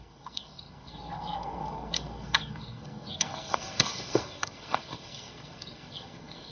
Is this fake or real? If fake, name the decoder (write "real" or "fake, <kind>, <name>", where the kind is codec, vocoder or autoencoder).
fake, codec, SNAC